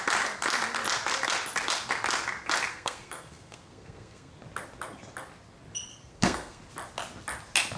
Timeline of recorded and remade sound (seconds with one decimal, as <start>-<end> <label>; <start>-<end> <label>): 0.0-2.7 recorded; 2.7-4.3 remade; 4.3-5.9 recorded; 5.9-6.6 remade; 6.6-7.8 recorded